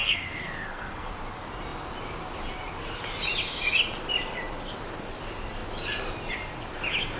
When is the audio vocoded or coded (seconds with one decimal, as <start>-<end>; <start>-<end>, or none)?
0.0-1.1